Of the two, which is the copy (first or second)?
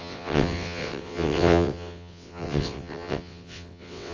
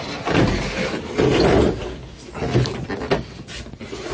first